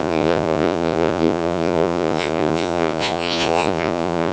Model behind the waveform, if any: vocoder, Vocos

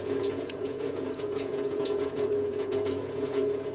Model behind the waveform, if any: vocoder, Vocos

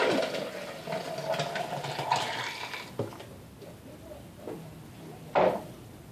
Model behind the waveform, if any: none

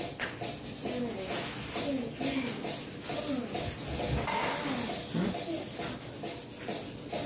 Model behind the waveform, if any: none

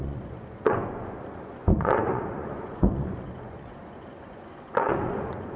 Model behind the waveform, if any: vocoder, Vocos